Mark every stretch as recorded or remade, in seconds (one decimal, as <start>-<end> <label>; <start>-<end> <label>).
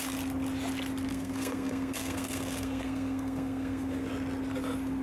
0.0-1.1 recorded; 1.1-4.1 remade; 4.1-5.0 recorded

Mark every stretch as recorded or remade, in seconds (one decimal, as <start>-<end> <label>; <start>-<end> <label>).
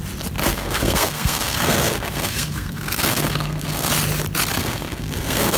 0.0-0.5 recorded; 0.5-3.9 remade; 3.9-4.6 recorded; 4.6-5.6 remade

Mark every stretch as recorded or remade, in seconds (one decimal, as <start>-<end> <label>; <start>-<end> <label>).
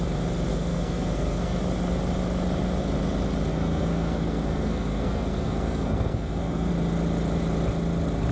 0.0-0.5 recorded; 0.5-1.6 remade; 1.6-3.5 recorded; 3.5-6.7 remade; 6.7-8.3 recorded